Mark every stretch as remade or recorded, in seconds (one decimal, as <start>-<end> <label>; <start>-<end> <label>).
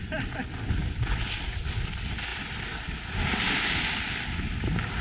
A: 0.0-5.0 recorded